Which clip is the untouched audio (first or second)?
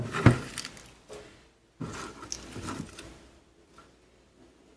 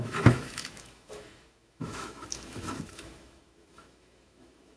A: first